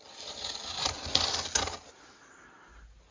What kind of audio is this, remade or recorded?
recorded